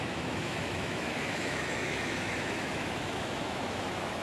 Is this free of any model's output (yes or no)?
no